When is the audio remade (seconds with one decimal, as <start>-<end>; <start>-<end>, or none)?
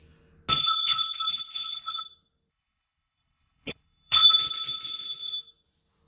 0.6-2.0; 2.5-4.3